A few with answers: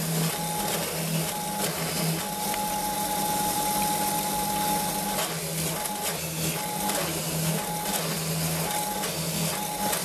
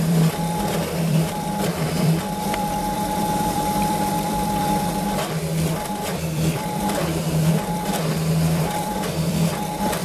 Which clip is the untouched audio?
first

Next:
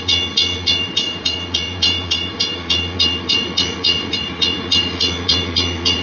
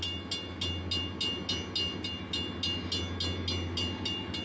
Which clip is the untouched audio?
second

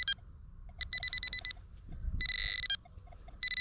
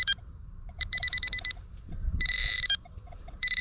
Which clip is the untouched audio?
first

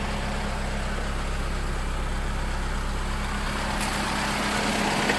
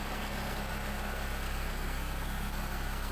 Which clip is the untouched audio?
first